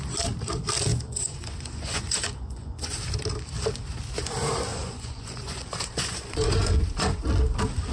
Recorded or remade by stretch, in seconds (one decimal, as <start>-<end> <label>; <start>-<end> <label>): 0.0-0.9 recorded; 0.9-3.1 remade; 3.1-4.7 recorded; 4.7-7.2 remade; 7.2-7.9 recorded